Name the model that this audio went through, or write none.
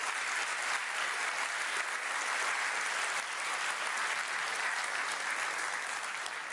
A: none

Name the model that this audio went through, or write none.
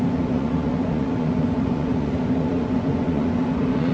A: vocoder, Vocos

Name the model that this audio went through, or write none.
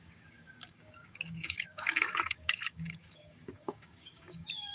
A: codec, DAC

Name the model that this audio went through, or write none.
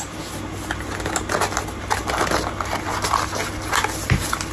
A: none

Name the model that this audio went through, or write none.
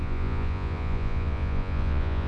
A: vocoder, Vocos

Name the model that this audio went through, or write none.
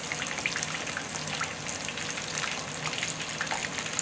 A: none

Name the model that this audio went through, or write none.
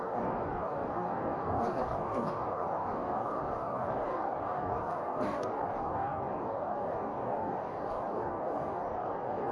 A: codec, DAC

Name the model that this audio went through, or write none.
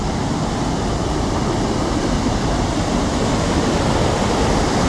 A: none